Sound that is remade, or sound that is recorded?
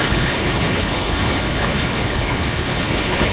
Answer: remade